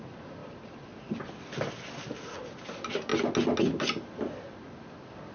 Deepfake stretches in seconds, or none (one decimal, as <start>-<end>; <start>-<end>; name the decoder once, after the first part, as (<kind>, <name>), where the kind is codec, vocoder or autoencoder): none

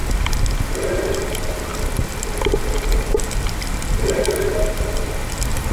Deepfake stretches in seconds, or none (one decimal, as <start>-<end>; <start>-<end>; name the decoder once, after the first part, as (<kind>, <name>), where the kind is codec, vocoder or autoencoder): none